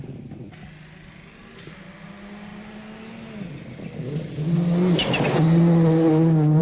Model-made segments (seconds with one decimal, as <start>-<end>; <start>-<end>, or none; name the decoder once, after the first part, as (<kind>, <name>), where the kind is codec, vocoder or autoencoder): none